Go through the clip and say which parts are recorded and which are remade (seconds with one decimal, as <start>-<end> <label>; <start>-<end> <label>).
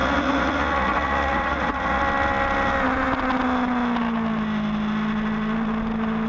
0.0-2.0 remade; 2.0-6.3 recorded